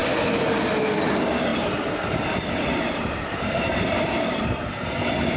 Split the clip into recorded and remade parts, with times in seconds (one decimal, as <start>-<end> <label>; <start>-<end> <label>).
0.0-0.6 remade; 0.6-1.5 recorded; 1.5-4.7 remade; 4.7-5.4 recorded

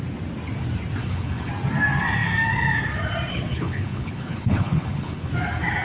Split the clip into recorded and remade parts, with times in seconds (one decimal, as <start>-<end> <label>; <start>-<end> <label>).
0.0-1.0 recorded; 1.0-1.5 remade; 1.5-3.3 recorded; 3.3-5.3 remade; 5.3-5.8 recorded